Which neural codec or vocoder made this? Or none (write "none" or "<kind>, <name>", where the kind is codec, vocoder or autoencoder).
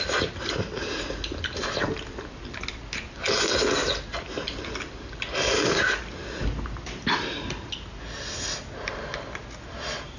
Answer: none